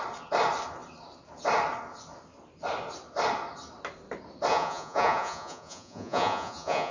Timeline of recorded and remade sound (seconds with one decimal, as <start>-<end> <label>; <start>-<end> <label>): 0.0-4.5 recorded; 4.5-6.9 remade